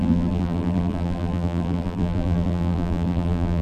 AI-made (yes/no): yes